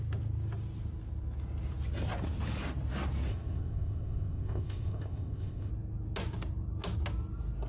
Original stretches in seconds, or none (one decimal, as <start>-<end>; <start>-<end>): 0.0-3.3; 5.7-7.7